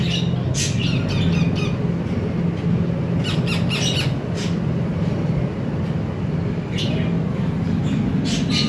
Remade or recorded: recorded